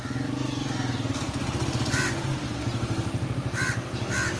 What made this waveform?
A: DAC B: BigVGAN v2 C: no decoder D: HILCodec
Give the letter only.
C